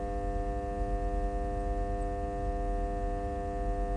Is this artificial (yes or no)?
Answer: no